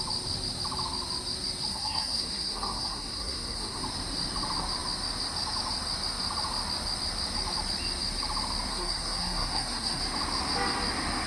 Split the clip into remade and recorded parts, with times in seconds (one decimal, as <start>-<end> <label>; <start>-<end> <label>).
0.0-1.7 recorded; 1.7-3.8 remade; 3.8-8.7 recorded; 8.7-10.0 remade; 10.0-11.3 recorded